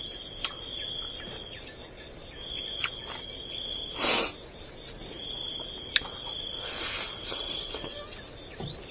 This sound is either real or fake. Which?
real